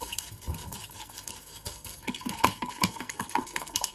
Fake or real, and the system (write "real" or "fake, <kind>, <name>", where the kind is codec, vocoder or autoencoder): fake, codec, SNAC